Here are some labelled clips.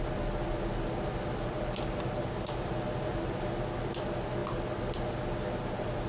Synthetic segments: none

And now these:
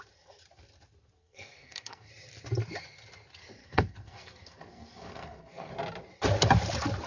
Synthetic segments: 1.2-2.1 (codec, SNAC); 3.6-5.7

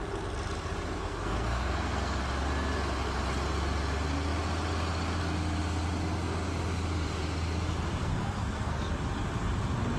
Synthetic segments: 1.0-2.2 (codec, SNAC); 8.0-8.9

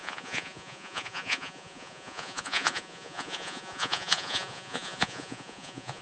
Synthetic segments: 0.0-6.0 (vocoder, Vocos)

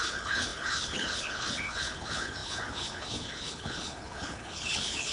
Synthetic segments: 0.0-5.1 (codec, HILCodec)

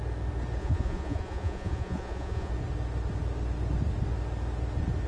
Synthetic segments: 0.6-2.5 (vocoder, Vocos)